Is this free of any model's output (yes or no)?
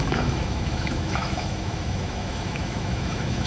no